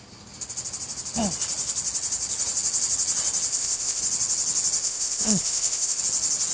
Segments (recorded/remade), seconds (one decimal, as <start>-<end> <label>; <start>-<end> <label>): 0.0-3.5 recorded; 3.5-4.0 remade; 4.0-4.8 recorded; 4.8-6.0 remade; 6.0-6.5 recorded